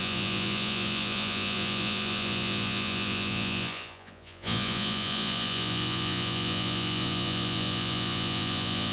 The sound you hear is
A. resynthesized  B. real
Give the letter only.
A